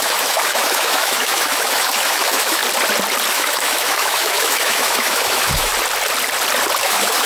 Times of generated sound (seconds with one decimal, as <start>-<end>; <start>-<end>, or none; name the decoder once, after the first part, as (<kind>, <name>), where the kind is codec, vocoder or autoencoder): 0.0-2.6 (autoencoder, DAC-VAE); 3.3-5.7; 6.8-7.3